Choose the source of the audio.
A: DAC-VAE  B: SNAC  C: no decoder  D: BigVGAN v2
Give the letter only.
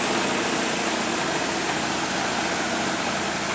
C